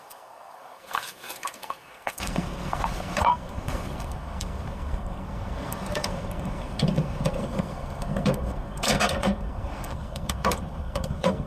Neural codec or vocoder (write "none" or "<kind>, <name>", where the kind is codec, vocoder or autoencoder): codec, SNAC